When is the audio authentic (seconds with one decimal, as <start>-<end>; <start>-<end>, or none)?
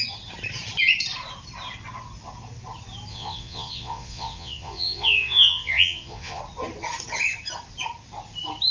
0.0-3.1; 6.4-8.7